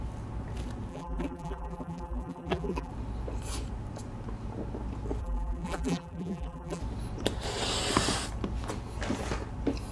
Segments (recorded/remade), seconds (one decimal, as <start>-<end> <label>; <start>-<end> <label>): 0.0-0.9 recorded; 0.9-2.9 remade; 2.9-5.2 recorded; 5.2-6.8 remade; 6.8-9.9 recorded